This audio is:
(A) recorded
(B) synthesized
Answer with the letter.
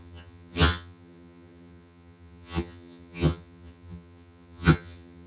B